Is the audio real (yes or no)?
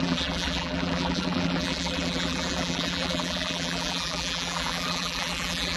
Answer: no